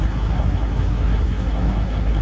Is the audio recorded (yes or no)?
no